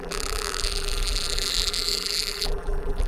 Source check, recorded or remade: remade